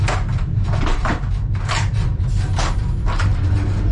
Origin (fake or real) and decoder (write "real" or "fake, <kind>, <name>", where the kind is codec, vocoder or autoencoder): fake, vocoder, BigVGAN v2